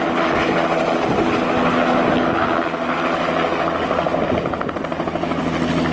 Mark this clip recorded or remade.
recorded